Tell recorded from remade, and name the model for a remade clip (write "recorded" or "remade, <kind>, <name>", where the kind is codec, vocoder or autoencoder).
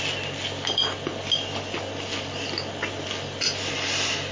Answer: recorded